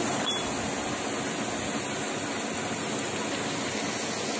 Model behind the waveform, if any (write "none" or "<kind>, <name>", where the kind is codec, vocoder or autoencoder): none